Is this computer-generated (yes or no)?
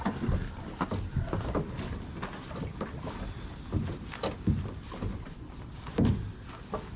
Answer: no